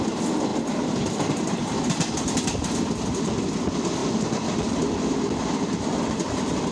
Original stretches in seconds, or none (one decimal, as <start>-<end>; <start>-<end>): 0.0-0.5; 2.8-6.7